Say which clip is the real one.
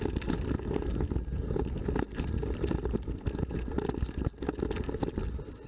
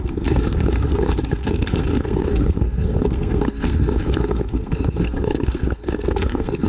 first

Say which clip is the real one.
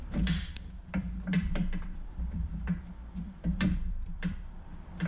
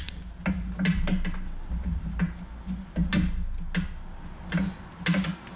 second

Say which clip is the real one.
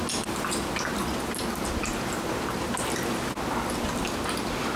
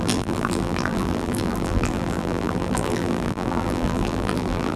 first